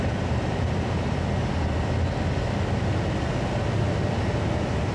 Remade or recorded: recorded